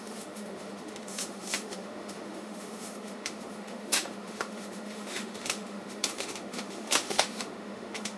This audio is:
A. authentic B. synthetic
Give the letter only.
B